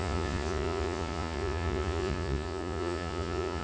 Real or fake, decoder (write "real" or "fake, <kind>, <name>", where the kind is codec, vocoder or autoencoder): fake, vocoder, Vocos